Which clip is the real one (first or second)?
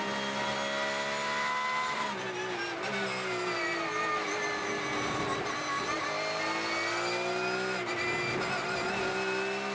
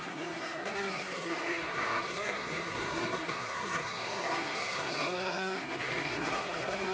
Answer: first